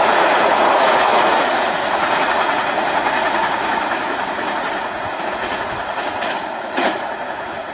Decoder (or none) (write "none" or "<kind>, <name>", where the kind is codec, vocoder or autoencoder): vocoder, Vocos